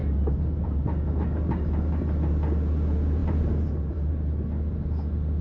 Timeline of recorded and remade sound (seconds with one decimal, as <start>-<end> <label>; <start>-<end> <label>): 0.0-3.2 recorded; 3.2-4.1 remade; 4.1-5.4 recorded